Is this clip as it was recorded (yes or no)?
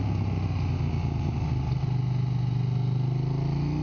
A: yes